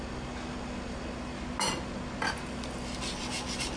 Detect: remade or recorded recorded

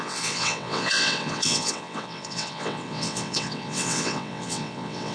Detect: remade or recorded remade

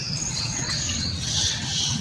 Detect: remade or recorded remade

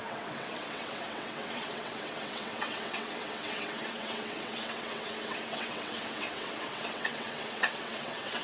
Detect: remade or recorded remade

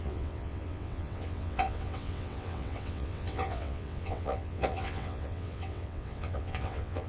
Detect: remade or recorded remade